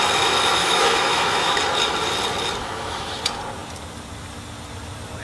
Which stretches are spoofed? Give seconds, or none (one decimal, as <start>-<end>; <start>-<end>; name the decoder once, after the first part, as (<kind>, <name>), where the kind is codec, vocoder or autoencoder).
0.6-1.6 (autoencoder, DAC-VAE); 2.6-3.2